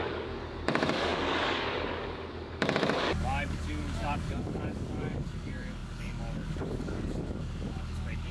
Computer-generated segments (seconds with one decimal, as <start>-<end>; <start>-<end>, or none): 0.0-8.3